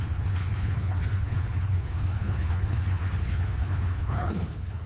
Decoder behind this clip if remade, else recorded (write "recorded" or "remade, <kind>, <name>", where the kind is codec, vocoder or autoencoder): remade, codec, HILCodec